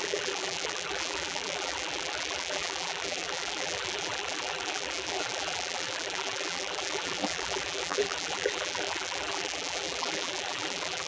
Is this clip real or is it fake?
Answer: fake